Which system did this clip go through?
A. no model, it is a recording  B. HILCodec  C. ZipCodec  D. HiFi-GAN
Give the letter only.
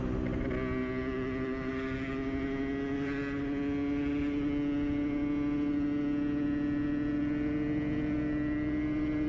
A